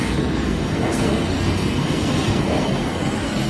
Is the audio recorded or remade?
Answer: remade